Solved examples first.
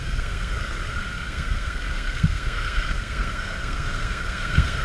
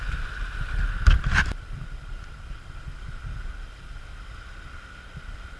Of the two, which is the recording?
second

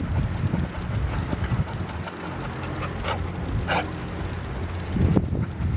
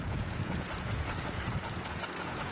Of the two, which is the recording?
first